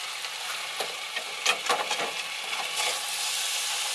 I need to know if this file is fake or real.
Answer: real